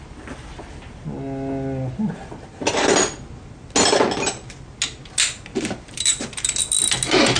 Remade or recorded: recorded